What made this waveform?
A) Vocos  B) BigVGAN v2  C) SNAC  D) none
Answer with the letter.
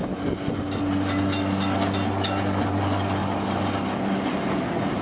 D